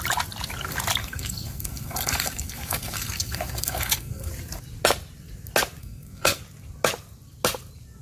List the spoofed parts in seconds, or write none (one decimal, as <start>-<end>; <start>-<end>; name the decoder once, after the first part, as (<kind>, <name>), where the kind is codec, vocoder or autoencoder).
1.0-4.3 (codec, SNAC); 5.8-6.4